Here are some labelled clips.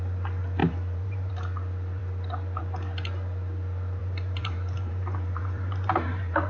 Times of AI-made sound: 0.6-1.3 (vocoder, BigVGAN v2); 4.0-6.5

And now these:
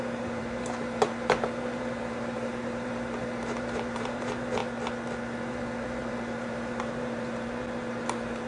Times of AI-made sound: 0.0-4.6 (vocoder, BigVGAN v2); 5.5-8.5

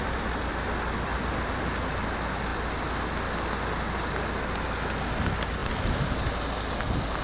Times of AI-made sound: none

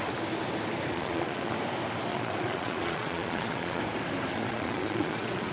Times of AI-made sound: 0.9-1.5 (vocoder, Vocos); 2.1-3.8; 4.3-5.5

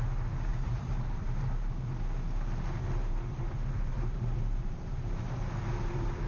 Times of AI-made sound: 0.5-1.7 (vocoder, BigVGAN v2); 3.0-6.3